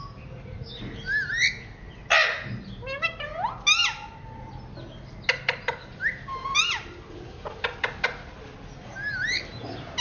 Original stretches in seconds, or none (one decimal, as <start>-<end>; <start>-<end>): 0.0-10.0